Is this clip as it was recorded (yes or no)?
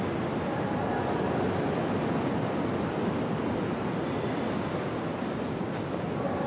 yes